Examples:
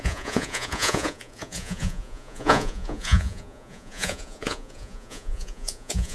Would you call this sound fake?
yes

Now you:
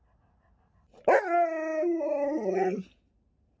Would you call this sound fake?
no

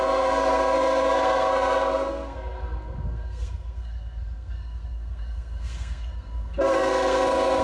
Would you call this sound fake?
yes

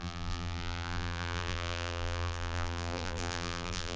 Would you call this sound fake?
yes